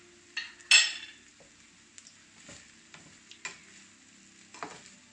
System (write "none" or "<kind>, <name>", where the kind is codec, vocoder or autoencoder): none